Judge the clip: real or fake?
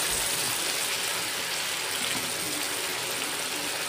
real